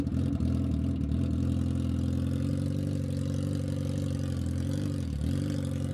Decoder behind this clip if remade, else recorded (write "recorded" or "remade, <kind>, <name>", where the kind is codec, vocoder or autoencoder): recorded